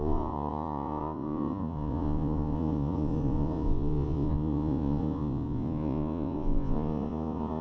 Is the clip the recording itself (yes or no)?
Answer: no